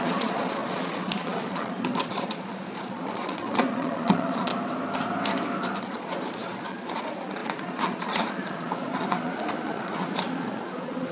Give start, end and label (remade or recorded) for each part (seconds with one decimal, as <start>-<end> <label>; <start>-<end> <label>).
0.0-4.5 remade; 4.5-5.8 recorded; 5.8-11.1 remade